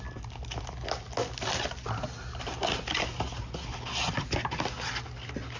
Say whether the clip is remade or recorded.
recorded